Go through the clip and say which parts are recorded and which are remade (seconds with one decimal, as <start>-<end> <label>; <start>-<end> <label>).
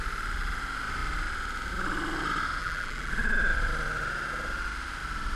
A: 0.0-2.6 recorded; 2.6-3.1 remade; 3.1-5.4 recorded